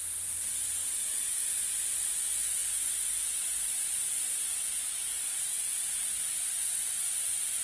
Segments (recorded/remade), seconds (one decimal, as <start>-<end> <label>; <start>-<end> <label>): 0.0-0.8 recorded; 0.8-2.1 remade; 2.1-7.6 recorded